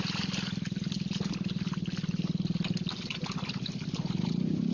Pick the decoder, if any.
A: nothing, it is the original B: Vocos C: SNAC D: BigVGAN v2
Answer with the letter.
A